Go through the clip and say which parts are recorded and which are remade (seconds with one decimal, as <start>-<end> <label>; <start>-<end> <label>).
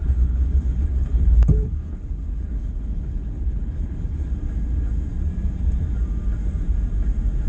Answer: 0.0-4.3 remade; 4.3-7.5 recorded